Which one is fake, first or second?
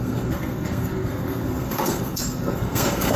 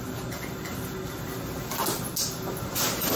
first